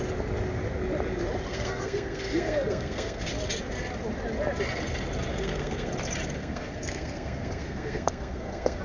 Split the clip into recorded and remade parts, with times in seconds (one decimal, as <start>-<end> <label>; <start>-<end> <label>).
0.0-1.5 recorded; 1.5-3.3 remade; 3.3-5.3 recorded; 5.3-5.9 remade; 5.9-6.4 recorded; 6.4-8.8 remade